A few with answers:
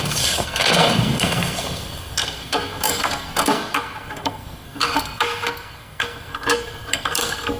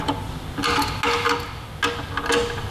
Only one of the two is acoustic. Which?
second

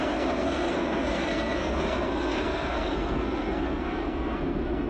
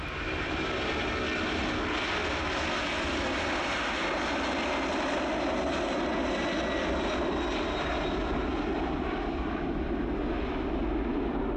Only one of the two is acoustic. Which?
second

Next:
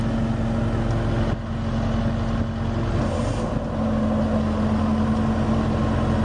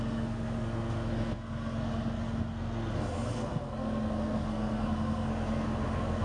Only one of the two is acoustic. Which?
first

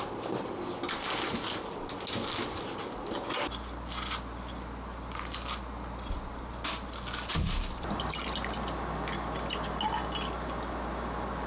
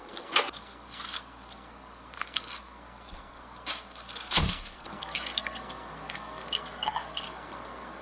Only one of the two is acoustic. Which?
first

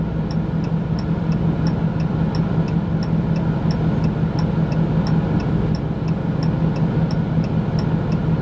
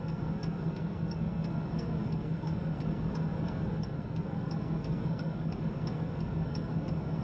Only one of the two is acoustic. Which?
first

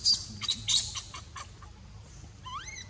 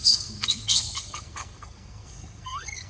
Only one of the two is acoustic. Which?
first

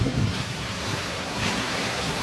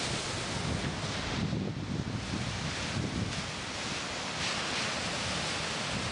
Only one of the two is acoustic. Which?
second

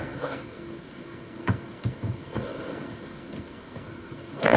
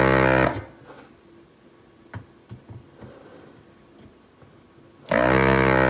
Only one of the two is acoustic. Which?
second